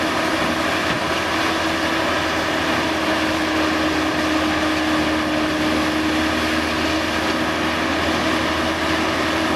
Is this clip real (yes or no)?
yes